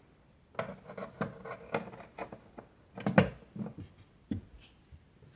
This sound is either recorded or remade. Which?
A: recorded